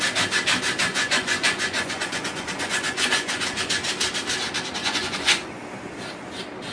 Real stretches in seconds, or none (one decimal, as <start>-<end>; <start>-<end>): 0.0-0.9; 3.9-4.8; 5.6-6.7